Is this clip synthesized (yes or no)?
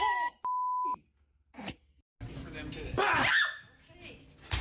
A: no